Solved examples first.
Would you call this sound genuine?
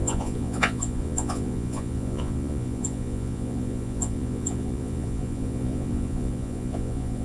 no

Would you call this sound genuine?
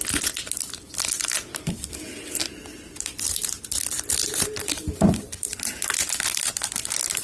yes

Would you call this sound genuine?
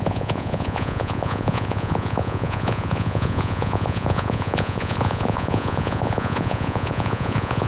no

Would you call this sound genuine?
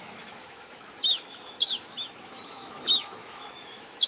no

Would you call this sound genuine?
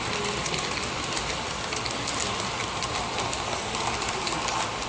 yes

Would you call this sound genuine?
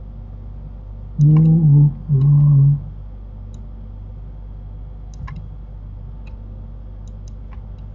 yes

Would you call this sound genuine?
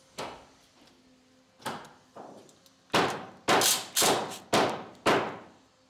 yes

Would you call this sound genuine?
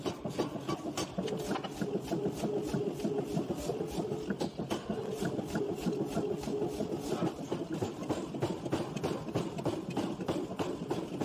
yes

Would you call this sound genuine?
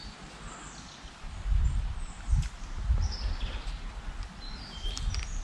yes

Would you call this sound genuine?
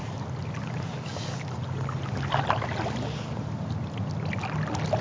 yes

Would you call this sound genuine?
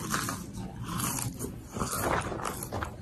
yes